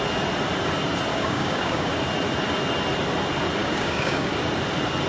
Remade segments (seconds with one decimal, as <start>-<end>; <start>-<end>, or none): 1.1-1.9; 3.6-4.3